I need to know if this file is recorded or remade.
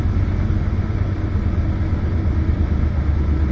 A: recorded